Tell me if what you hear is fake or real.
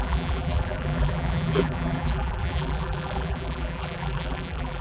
fake